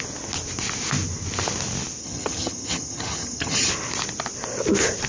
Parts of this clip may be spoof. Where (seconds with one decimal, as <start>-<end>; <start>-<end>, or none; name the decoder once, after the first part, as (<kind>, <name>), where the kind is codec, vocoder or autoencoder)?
2.0-3.7 (vocoder, HiFi-GAN)